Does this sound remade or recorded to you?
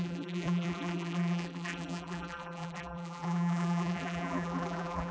remade